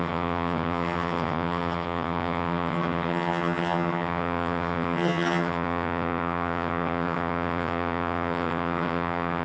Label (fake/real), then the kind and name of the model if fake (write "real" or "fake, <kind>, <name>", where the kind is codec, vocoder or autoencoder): fake, vocoder, HiFi-GAN